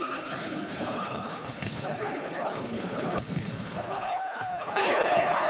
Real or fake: fake